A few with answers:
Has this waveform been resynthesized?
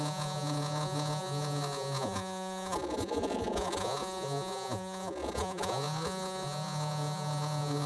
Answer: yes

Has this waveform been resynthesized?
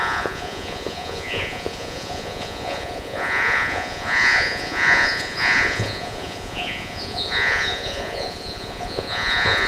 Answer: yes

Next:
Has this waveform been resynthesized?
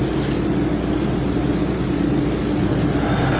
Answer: no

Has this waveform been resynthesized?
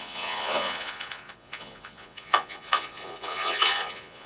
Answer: yes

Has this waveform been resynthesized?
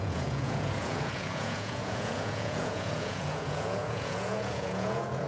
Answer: yes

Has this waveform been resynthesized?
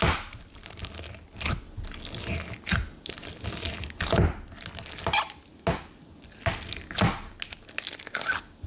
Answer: no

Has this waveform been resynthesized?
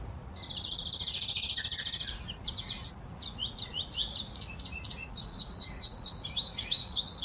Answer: yes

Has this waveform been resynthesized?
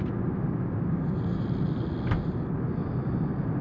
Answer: no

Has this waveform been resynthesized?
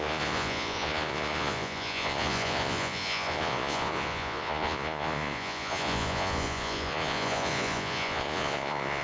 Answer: yes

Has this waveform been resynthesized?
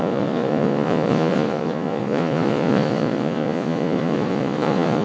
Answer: yes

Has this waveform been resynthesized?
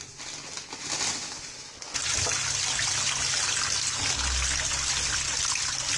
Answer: no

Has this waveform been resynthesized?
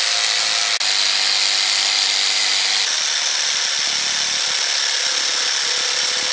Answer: no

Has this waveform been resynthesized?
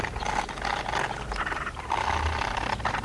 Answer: no